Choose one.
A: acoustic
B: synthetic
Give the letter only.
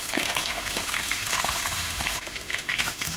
B